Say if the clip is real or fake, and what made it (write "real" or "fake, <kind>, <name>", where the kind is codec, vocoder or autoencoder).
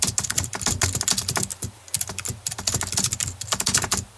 real